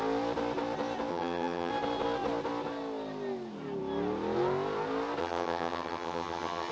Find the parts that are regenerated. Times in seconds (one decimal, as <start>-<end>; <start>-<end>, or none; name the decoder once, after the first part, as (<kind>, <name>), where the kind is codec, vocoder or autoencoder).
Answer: 1.1-1.7 (vocoder, HiFi-GAN); 5.2-6.7